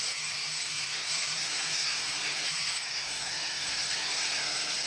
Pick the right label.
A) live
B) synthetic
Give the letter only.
B